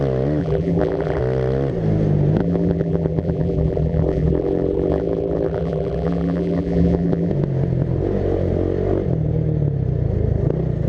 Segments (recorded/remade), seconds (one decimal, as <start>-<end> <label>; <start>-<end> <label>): 0.0-0.4 recorded; 0.4-1.2 remade; 1.2-2.4 recorded; 2.4-7.3 remade; 7.3-10.9 recorded